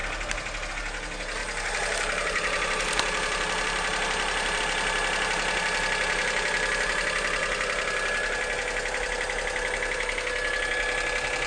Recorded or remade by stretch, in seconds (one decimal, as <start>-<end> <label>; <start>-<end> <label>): 0.0-1.4 recorded; 1.4-4.6 remade; 4.6-11.5 recorded